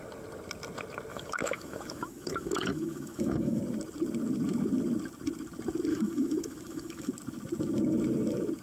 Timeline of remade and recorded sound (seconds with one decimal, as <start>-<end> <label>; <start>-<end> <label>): 0.0-1.1 recorded; 1.1-3.6 remade; 3.6-5.9 recorded; 5.9-7.1 remade; 7.1-8.6 recorded

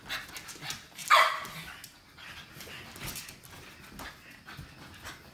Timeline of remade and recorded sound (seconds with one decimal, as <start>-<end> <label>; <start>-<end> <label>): 0.0-5.3 recorded

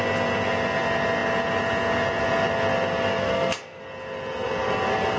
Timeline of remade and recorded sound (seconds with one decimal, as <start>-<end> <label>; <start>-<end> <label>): 0.0-3.2 recorded; 3.2-3.8 remade; 3.8-5.2 recorded

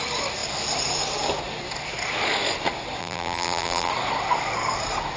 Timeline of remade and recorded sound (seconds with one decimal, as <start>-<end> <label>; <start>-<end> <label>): 0.0-3.0 recorded; 3.0-3.9 remade; 3.9-5.2 recorded

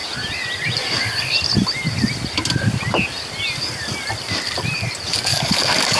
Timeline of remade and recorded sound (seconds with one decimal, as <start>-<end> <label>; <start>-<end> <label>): 0.0-5.3 recorded; 5.3-6.0 remade

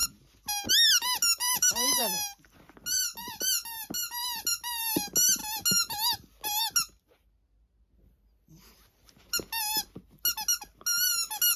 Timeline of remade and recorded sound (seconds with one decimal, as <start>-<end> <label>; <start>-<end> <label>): 0.0-1.4 recorded; 1.4-2.0 remade; 2.0-11.6 recorded

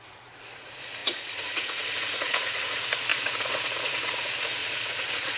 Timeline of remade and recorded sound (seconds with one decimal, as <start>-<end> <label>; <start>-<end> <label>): 0.0-5.4 remade